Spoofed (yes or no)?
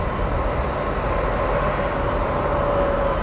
no